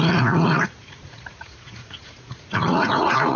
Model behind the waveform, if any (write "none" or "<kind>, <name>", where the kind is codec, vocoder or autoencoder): vocoder, Vocos